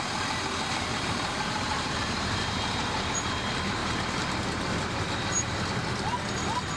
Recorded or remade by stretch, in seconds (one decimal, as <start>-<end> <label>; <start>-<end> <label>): 0.0-0.9 recorded; 0.9-3.3 remade; 3.3-3.8 recorded; 3.8-5.5 remade; 5.5-6.8 recorded